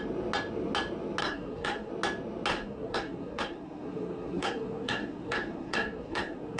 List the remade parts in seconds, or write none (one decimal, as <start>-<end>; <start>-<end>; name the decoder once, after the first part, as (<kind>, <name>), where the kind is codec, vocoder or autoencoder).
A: 1.2-1.9 (codec, SNAC); 2.5-6.6